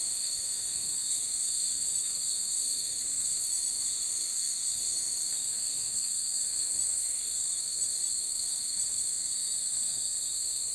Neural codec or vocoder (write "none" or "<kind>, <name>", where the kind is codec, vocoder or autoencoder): codec, SNAC